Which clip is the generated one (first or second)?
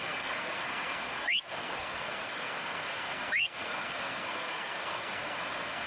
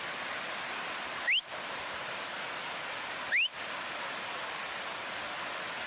first